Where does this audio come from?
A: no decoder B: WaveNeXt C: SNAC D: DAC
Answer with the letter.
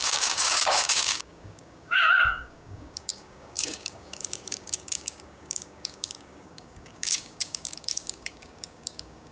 D